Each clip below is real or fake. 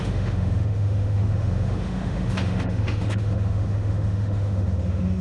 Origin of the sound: fake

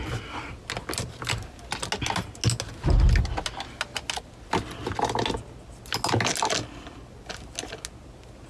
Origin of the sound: real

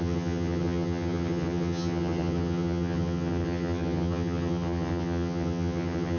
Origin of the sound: fake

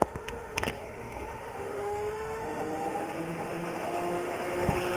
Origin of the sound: fake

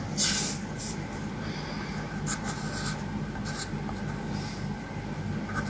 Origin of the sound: real